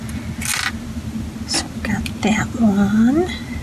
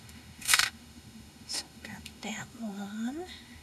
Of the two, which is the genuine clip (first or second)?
first